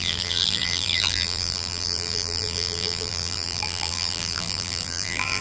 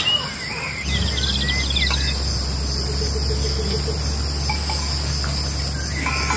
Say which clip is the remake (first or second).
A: first